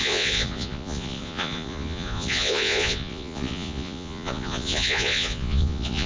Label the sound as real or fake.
fake